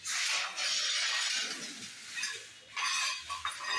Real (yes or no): yes